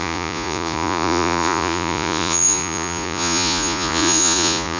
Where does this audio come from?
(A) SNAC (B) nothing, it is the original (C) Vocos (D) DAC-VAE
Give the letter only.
C